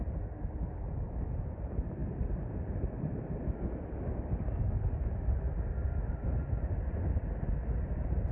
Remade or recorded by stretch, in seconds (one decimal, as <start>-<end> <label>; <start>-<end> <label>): 0.0-8.3 recorded